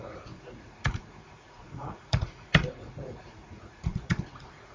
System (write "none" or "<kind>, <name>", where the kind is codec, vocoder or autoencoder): vocoder, Vocos